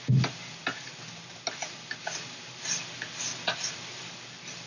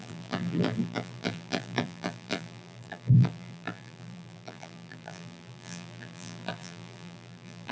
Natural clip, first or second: first